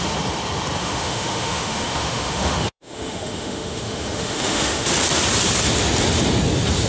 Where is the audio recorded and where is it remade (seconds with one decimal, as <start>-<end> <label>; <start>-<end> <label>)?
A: 0.0-0.8 recorded; 0.8-4.9 remade; 4.9-6.9 recorded